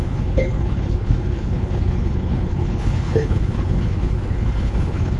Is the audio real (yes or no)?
no